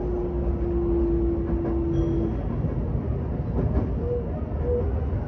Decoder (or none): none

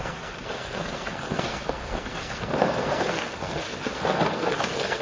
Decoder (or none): codec, SNAC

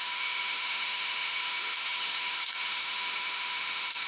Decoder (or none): autoencoder, DAC-VAE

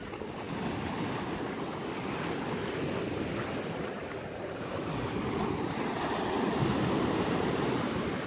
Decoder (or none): none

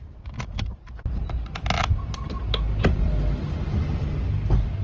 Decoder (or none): none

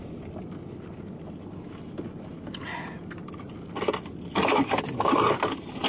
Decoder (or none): none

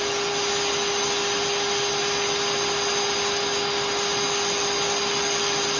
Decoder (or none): none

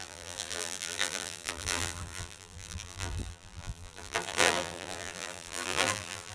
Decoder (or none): vocoder, BigVGAN v2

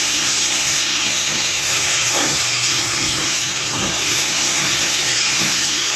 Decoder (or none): codec, SNAC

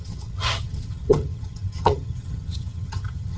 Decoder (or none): vocoder, HiFi-GAN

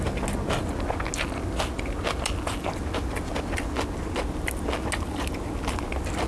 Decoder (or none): none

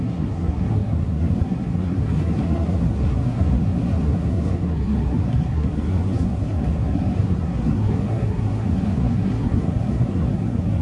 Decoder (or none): codec, SNAC